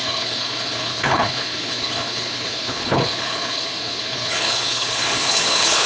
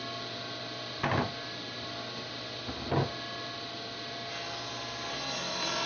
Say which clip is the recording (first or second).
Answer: second